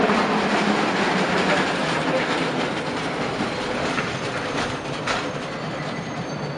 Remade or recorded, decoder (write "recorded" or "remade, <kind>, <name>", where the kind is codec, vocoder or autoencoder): remade, vocoder, BigVGAN v2